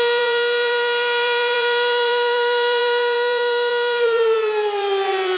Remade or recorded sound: remade